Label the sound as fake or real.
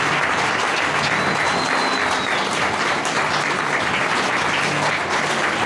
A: real